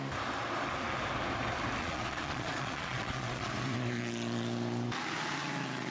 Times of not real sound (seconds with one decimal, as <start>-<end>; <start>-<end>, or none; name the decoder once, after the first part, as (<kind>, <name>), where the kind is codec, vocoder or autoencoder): 1.8-3.5 (vocoder, Vocos)